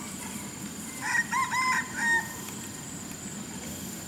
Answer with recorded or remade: recorded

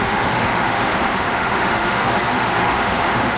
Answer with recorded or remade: remade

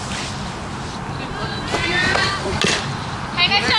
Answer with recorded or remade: recorded